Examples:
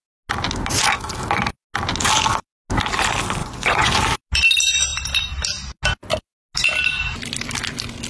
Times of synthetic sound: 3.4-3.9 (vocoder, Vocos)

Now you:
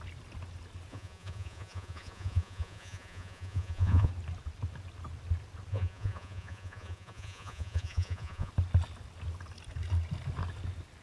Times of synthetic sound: 0.9-4.1 (vocoder, Vocos); 5.7-8.5

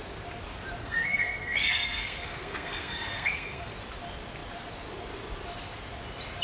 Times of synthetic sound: 0.8-3.7 (codec, SNAC)

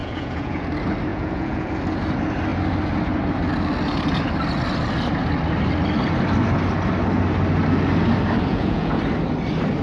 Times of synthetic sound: 0.0-0.6 (vocoder, Vocos); 1.1-1.7; 8.5-9.0

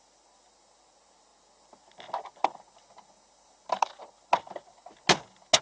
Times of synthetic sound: none

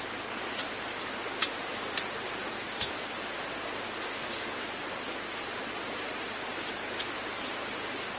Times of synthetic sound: none

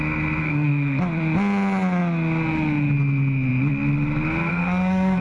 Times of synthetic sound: 0.4-1.0 (codec, SNAC); 4.5-5.2